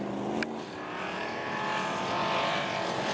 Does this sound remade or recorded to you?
recorded